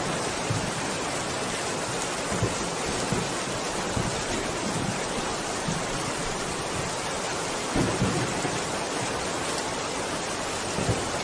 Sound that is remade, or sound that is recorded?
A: recorded